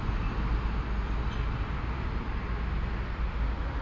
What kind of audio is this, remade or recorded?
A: recorded